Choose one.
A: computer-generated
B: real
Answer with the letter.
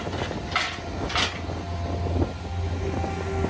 B